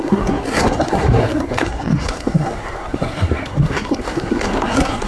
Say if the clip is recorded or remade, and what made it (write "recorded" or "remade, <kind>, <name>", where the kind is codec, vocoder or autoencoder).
remade, codec, SNAC